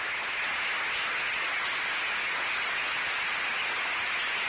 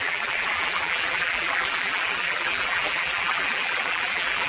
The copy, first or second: second